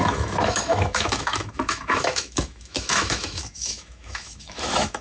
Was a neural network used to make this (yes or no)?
yes